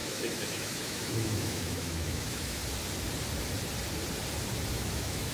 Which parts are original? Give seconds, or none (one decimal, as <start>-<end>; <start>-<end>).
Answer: 2.6-4.7